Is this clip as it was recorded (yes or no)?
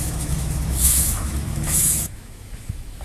no